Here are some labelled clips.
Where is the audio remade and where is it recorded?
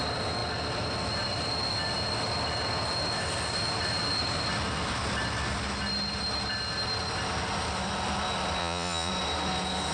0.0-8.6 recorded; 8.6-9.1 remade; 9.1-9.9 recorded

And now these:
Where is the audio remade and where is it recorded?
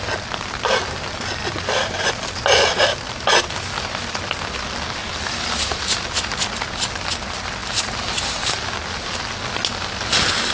0.0-10.5 recorded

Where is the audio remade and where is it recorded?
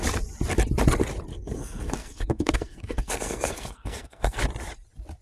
0.0-1.3 recorded; 1.3-4.4 remade; 4.4-5.2 recorded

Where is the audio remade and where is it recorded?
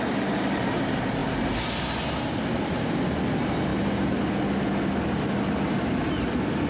0.0-6.7 recorded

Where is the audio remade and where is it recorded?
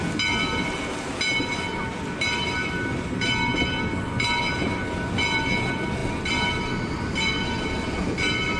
0.0-8.6 recorded